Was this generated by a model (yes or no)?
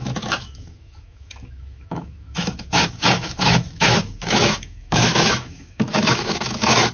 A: yes